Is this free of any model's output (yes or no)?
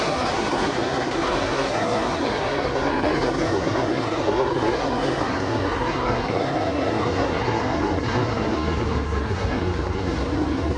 no